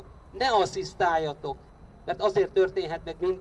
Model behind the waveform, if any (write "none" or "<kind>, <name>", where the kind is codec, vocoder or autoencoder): none